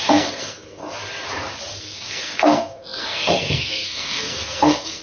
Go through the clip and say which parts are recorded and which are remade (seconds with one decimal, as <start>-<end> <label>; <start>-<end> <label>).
0.0-0.8 remade; 0.8-1.8 recorded; 1.8-5.0 remade